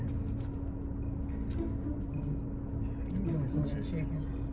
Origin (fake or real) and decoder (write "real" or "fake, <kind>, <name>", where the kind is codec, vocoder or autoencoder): real